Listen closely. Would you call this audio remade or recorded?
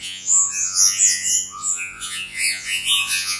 remade